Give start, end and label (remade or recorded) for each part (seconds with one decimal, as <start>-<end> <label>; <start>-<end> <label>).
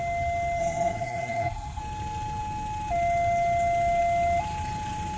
0.0-0.6 recorded; 0.6-1.8 remade; 1.8-5.2 recorded